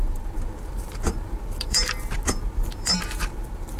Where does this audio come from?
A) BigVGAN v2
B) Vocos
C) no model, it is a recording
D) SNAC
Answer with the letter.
A